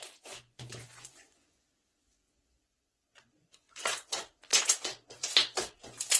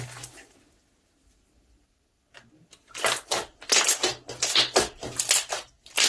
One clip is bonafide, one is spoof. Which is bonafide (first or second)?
second